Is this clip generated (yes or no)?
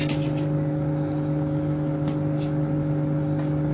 no